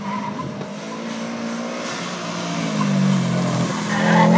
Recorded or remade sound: recorded